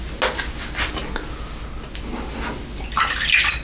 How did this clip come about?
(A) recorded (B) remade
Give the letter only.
A